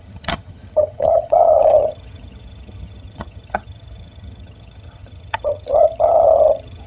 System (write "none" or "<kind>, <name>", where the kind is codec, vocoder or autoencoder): vocoder, HiFi-GAN